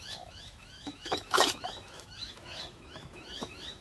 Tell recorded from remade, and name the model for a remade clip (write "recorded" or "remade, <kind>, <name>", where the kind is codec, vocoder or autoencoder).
remade, autoencoder, DAC-VAE